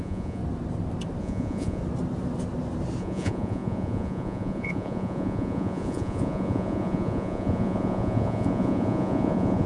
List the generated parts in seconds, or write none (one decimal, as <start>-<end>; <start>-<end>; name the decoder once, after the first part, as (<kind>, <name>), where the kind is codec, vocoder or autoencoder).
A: 0.0-0.4 (vocoder, Vocos); 1.2-1.8; 3.0-9.7